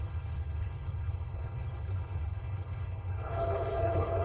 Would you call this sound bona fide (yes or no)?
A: no